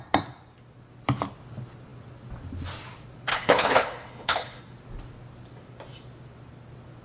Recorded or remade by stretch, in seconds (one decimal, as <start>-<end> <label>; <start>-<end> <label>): 0.0-3.3 recorded; 3.3-4.6 remade; 4.6-7.0 recorded